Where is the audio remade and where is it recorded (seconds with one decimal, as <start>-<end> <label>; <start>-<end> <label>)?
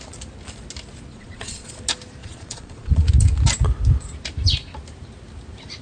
0.0-1.1 recorded; 1.1-1.7 remade; 1.7-2.2 recorded; 2.2-3.1 remade; 3.1-5.8 recorded